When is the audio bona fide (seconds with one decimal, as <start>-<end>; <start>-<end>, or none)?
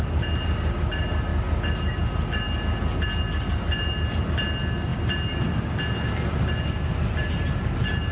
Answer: 0.0-8.1